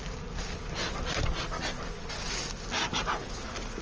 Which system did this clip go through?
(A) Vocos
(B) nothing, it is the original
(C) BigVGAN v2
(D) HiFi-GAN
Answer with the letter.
B